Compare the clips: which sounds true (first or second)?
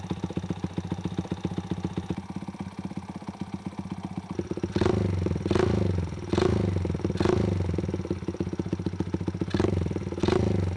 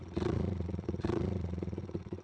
first